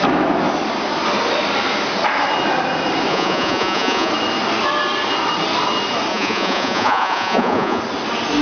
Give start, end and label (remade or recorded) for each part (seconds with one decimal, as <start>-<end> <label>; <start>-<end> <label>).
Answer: 0.0-3.1 recorded; 3.1-4.1 remade; 4.1-6.1 recorded; 6.1-7.8 remade; 7.8-8.4 recorded